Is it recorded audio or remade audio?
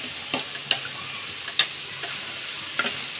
recorded